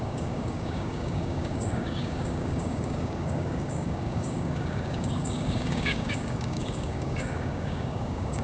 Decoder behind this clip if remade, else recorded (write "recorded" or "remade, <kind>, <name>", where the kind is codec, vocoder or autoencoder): remade, codec, DAC